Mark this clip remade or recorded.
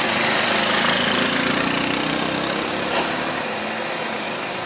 recorded